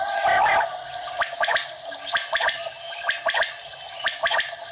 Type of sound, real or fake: real